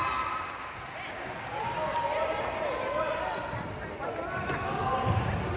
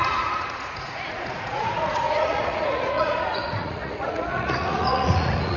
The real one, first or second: first